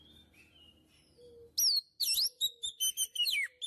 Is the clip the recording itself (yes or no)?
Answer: yes